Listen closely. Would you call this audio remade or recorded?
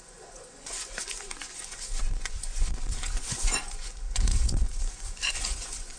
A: remade